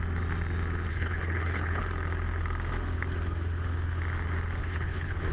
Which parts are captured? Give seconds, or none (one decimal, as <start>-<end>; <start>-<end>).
0.0-0.9; 1.8-4.6